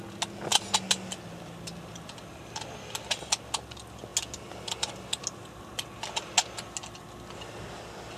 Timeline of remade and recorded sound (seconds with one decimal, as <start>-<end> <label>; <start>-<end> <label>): 0.0-8.2 recorded